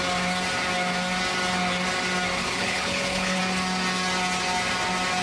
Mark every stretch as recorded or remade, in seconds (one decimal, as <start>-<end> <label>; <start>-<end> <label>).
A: 0.0-2.4 recorded; 2.4-3.4 remade; 3.4-5.2 recorded